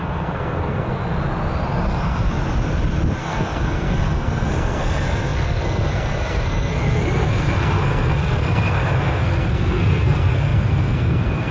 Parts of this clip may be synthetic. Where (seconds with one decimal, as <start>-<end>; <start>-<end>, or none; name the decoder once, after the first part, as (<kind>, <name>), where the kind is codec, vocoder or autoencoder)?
0.0-1.0 (codec, SNAC); 1.9-2.4; 3.2-11.5